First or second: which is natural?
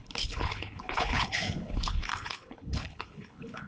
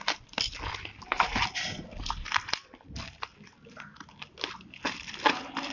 second